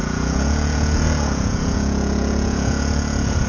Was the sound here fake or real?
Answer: fake